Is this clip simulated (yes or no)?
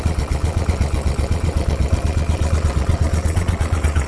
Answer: yes